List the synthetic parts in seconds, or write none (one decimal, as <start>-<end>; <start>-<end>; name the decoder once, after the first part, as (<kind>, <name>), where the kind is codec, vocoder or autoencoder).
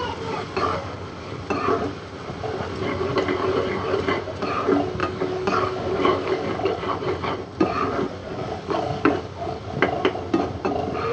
0.8-1.4 (codec, DAC); 5.0-7.3; 8.2-9.6